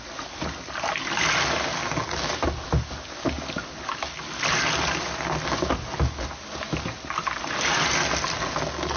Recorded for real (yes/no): yes